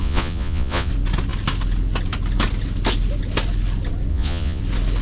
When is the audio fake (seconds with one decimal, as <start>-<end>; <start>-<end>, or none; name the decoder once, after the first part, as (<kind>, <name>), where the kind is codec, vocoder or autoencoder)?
0.0-0.9 (vocoder, Vocos); 4.1-4.6